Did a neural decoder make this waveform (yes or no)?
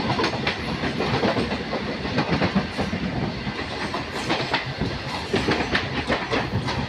no